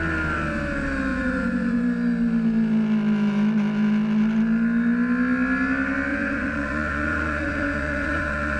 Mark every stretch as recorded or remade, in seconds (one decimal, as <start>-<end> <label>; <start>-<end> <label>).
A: 0.0-1.1 recorded; 1.1-1.8 remade; 1.8-6.1 recorded; 6.1-8.6 remade